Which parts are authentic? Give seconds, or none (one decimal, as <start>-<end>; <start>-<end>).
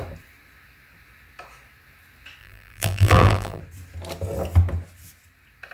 0.0-2.4; 3.6-5.7